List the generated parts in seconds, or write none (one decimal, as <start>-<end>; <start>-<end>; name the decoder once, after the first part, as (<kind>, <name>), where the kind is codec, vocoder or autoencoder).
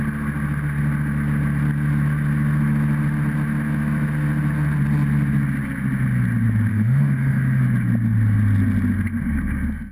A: 6.7-7.6 (autoencoder, DAC-VAE)